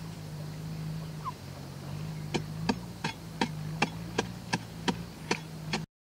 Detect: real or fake real